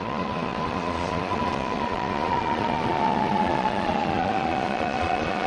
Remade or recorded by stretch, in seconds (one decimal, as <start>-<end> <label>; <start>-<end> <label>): 0.0-5.5 remade